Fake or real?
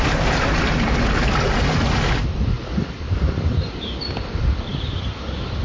real